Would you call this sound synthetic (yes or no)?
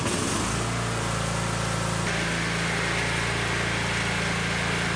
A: no